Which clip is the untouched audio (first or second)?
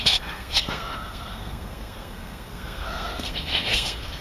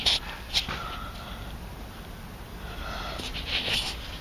second